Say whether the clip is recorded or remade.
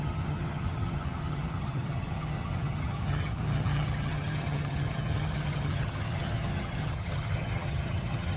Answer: remade